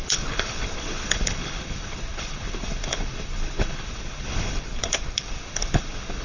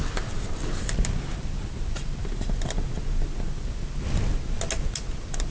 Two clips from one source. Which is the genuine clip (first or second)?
second